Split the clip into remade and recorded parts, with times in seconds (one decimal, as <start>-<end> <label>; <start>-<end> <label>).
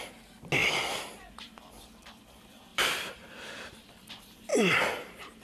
0.0-2.7 recorded; 2.7-4.1 remade; 4.1-5.4 recorded